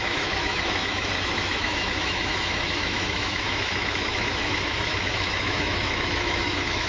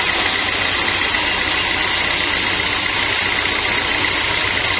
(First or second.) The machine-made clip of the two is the first